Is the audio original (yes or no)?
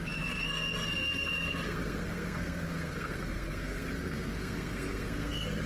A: no